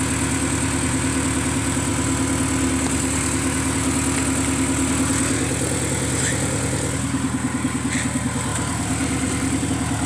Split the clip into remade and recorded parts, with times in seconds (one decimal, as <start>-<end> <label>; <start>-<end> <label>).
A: 0.0-8.5 recorded; 8.5-9.7 remade; 9.7-10.1 recorded